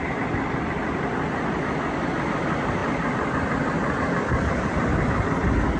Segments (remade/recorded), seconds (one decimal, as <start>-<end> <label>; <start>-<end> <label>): 0.0-5.8 recorded

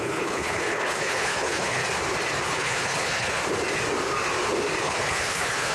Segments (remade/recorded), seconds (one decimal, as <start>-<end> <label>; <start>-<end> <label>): 0.0-1.8 remade; 1.8-2.4 recorded; 2.4-3.4 remade; 3.4-4.8 recorded; 4.8-5.7 remade

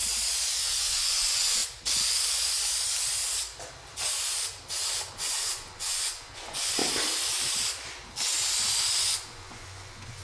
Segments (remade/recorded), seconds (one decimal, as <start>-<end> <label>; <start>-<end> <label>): 0.0-0.6 recorded; 0.6-1.6 remade; 1.6-5.1 recorded; 5.1-6.8 remade; 6.8-9.0 recorded; 9.0-10.2 remade

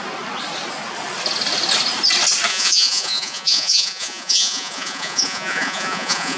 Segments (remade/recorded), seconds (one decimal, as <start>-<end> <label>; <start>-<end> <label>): 0.0-2.5 recorded; 2.5-6.4 remade

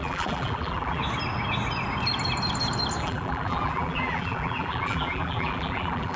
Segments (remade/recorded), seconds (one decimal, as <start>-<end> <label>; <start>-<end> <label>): 0.0-1.0 remade; 1.0-3.0 recorded; 3.0-6.2 remade

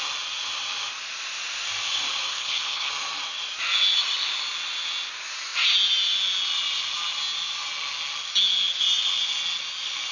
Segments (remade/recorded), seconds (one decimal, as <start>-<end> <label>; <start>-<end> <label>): 0.0-2.3 recorded; 2.3-2.9 remade; 2.9-10.1 recorded